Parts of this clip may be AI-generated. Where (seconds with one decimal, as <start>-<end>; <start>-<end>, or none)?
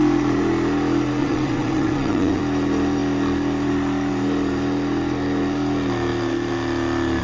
1.2-2.4